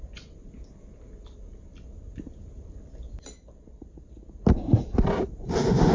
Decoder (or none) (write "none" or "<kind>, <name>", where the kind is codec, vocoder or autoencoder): none